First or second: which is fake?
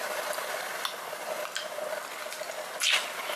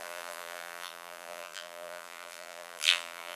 second